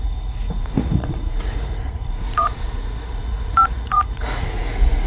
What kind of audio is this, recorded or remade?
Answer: remade